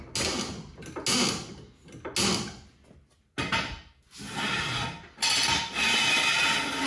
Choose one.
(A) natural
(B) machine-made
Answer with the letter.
A